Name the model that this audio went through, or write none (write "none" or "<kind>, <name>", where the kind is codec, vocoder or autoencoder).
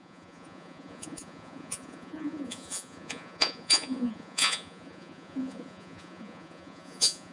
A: vocoder, Vocos